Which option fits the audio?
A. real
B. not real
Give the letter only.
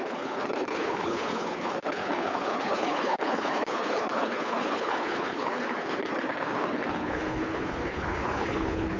B